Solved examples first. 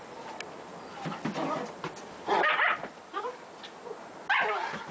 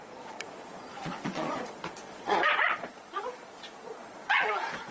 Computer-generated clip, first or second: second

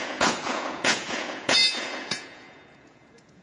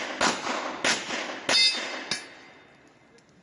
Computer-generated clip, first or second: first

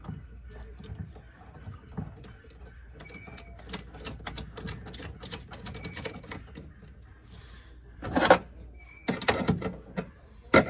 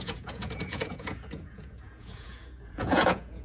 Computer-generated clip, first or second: second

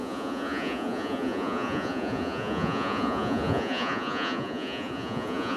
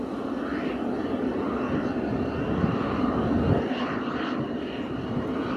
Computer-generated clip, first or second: first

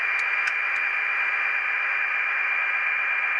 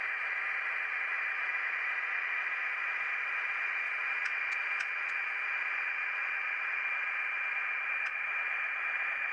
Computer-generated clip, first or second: second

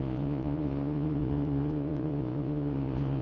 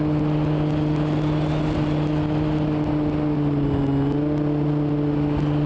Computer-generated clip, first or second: first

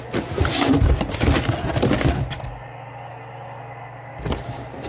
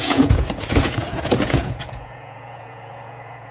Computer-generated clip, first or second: second